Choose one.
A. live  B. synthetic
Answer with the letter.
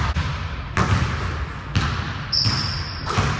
A